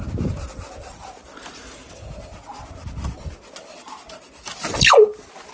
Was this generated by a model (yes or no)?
no